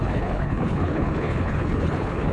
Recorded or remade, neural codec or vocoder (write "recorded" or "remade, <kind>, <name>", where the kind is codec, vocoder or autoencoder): remade, codec, HILCodec